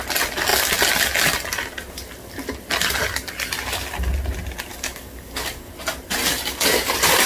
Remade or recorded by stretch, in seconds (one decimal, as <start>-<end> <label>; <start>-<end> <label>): 0.0-4.7 recorded; 4.7-5.7 remade; 5.7-7.3 recorded